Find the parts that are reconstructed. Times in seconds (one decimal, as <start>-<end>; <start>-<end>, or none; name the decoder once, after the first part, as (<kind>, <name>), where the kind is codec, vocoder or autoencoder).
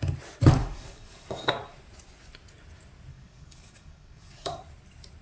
0.6-1.5 (codec, DAC); 3.1-4.6